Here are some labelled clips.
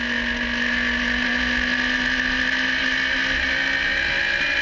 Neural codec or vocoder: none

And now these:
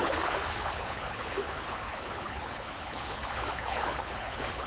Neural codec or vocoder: codec, HILCodec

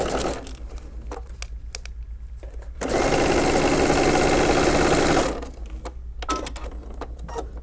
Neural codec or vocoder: none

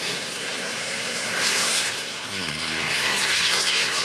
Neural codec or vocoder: codec, SNAC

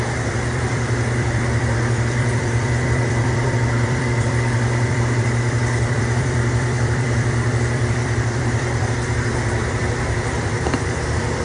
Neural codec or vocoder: vocoder, BigVGAN v2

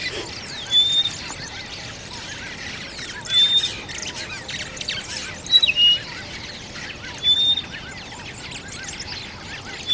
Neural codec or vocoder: none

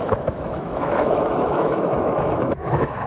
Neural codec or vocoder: autoencoder, DAC-VAE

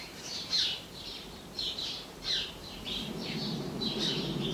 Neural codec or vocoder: vocoder, BigVGAN v2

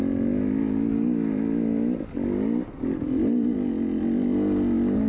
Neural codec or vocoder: none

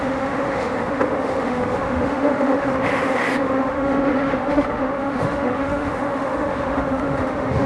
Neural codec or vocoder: autoencoder, DAC-VAE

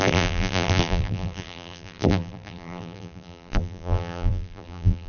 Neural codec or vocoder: vocoder, BigVGAN v2